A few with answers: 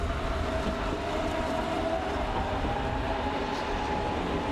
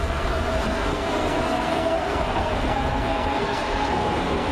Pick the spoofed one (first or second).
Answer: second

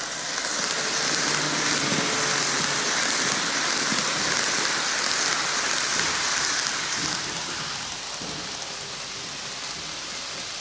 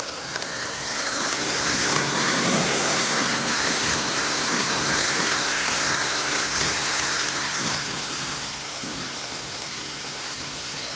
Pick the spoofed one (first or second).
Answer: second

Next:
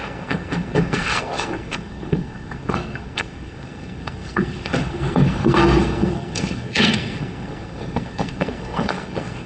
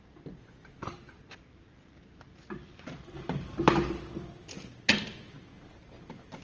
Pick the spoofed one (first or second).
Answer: first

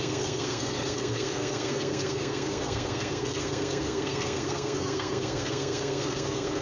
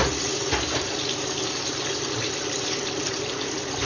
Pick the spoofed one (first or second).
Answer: first